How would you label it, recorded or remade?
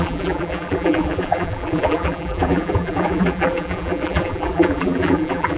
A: remade